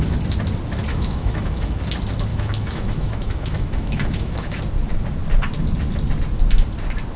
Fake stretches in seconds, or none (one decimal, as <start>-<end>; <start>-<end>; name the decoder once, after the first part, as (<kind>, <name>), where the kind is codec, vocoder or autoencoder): 0.9-1.8 (autoencoder, DAC-VAE); 2.3-4.6